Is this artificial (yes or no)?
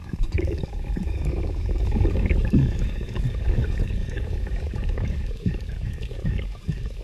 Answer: yes